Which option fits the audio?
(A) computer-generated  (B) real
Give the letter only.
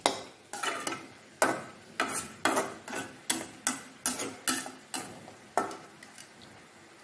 B